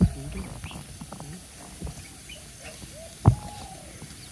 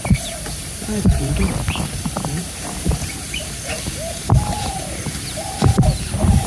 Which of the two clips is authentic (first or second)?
first